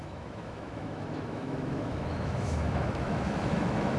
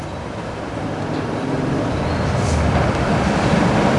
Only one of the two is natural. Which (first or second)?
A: second